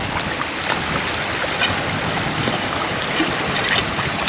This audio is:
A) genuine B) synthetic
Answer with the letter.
A